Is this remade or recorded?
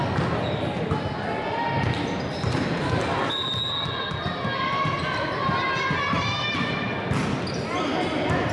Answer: recorded